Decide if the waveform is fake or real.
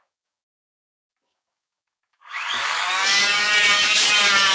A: fake